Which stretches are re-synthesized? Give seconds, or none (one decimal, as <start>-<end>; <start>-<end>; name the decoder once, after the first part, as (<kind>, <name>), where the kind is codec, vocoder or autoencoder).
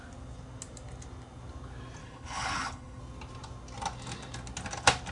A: 2.0-3.0 (codec, HILCodec)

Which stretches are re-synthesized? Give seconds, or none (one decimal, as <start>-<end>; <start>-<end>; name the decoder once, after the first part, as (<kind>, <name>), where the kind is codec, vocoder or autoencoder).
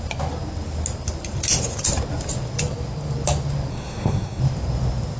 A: 3.7-4.4 (codec, SNAC)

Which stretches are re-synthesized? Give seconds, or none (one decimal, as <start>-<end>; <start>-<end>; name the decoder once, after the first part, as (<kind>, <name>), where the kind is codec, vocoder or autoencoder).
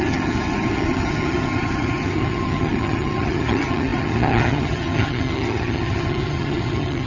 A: 0.0-7.1 (vocoder, HiFi-GAN)